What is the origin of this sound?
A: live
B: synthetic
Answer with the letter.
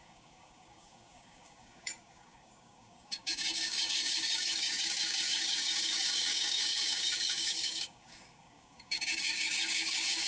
B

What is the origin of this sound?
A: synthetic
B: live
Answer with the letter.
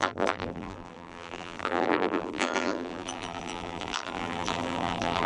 A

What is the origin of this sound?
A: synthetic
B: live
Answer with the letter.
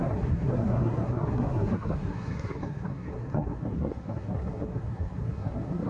A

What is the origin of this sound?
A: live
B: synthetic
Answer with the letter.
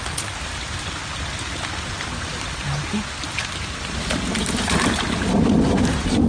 A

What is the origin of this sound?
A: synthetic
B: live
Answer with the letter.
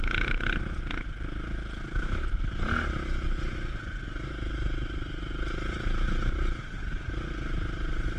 B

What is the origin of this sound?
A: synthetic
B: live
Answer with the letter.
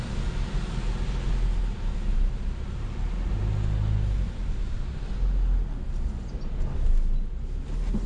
B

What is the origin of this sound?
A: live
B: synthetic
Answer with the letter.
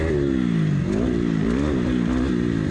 A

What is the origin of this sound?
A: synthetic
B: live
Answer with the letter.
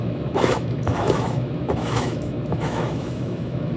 A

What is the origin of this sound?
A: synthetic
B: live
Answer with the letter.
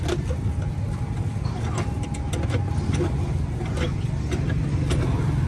B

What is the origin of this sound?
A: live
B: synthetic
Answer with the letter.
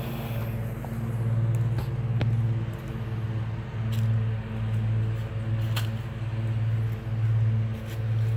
A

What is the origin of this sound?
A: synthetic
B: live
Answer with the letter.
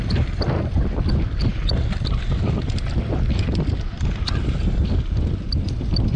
B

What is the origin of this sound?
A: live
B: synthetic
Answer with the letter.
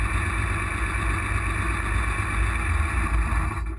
A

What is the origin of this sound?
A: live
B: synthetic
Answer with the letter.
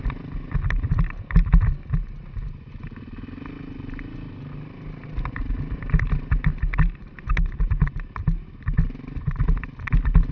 A